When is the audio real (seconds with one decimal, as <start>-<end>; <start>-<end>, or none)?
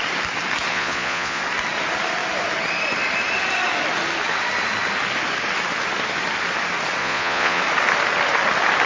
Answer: 0.0-0.7; 1.4-7.0; 7.6-8.9